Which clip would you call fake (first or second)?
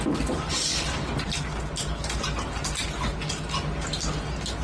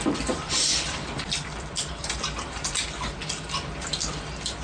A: second